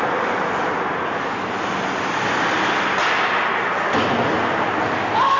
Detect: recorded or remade recorded